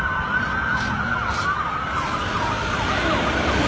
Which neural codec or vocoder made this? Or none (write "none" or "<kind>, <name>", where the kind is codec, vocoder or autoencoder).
none